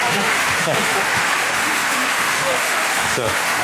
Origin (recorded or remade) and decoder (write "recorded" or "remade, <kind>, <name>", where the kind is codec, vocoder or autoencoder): remade, autoencoder, DAC-VAE